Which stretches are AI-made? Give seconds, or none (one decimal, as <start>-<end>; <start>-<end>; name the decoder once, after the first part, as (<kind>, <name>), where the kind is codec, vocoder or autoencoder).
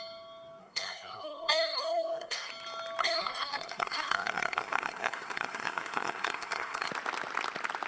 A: 0.6-2.5 (codec, SNAC); 3.0-6.9